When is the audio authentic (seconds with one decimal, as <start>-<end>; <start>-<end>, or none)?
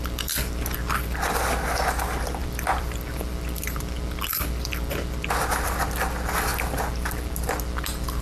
0.0-2.4; 3.0-8.2